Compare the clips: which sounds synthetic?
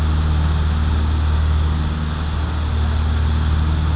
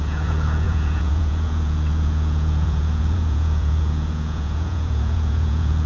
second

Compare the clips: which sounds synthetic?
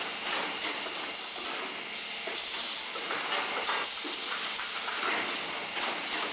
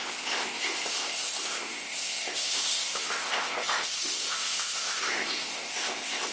second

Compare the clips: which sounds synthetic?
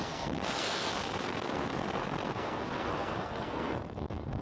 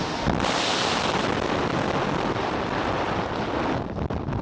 first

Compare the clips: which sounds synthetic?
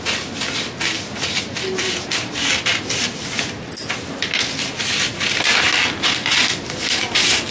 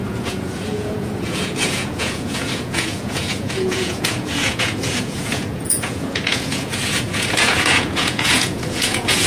second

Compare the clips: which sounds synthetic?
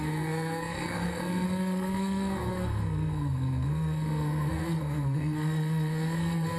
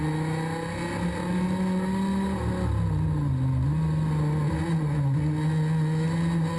first